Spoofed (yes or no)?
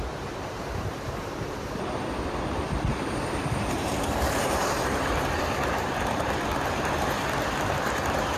yes